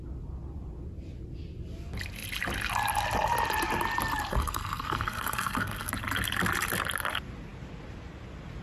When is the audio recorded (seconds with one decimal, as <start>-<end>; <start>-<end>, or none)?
0.0-4.3; 5.9-8.6